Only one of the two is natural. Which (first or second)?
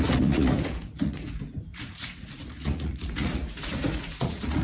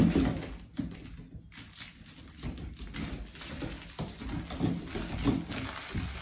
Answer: second